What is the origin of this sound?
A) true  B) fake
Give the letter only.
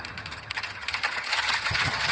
B